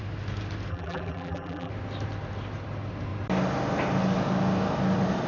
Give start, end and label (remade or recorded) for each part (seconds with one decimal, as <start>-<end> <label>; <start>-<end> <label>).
0.0-0.7 recorded; 0.7-1.7 remade; 1.7-5.3 recorded